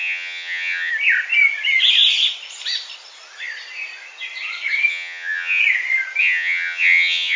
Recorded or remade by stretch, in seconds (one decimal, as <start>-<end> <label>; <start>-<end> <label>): 0.0-0.9 remade; 0.9-4.9 recorded; 4.9-5.6 remade; 5.6-6.2 recorded; 6.2-7.4 remade